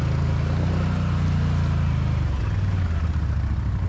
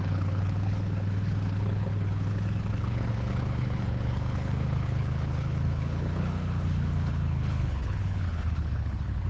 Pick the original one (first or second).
first